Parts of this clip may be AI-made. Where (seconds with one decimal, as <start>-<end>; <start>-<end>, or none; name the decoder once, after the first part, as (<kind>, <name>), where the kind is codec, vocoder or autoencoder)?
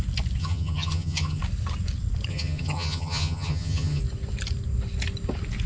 0.4-1.4 (vocoder, HiFi-GAN); 2.3-4.0